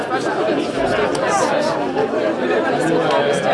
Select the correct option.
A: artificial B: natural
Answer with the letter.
B